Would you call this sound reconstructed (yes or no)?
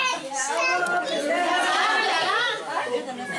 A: no